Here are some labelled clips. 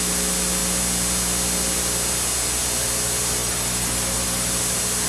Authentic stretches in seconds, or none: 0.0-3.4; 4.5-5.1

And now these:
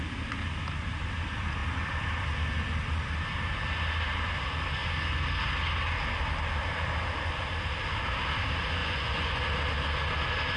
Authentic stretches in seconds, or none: 0.0-8.8; 9.4-10.6

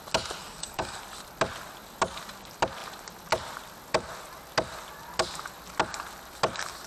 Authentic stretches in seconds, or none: 0.0-0.4; 1.0-6.9

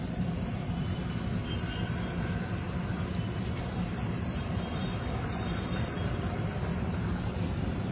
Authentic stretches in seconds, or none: 1.3-2.9; 6.7-7.5